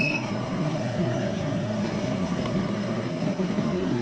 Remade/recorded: remade